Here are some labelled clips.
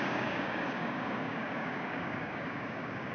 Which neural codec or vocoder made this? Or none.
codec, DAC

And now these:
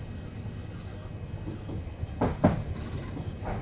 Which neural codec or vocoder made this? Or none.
none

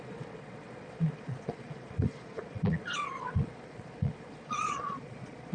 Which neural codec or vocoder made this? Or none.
vocoder, Vocos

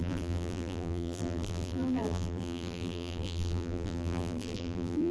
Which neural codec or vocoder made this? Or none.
vocoder, BigVGAN v2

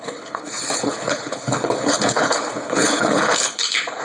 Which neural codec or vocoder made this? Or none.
codec, HILCodec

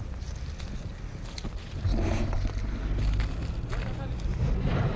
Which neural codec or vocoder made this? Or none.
none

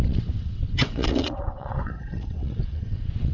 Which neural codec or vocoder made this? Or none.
vocoder, WaveNeXt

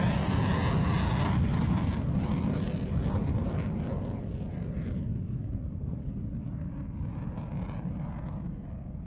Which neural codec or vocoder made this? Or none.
none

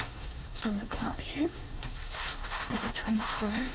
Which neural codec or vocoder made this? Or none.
codec, SNAC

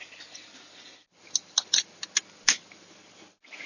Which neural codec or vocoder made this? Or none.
none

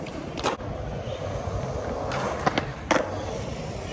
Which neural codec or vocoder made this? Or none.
none